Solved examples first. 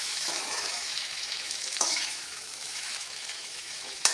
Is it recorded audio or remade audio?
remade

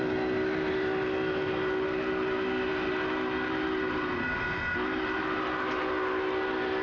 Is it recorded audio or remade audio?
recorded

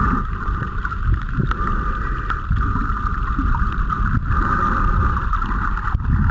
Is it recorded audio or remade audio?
recorded